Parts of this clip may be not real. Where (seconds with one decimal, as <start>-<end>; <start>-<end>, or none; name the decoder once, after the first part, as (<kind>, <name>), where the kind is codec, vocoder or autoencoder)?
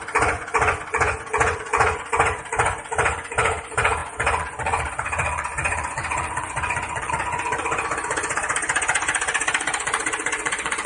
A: 0.0-10.9 (vocoder, Vocos)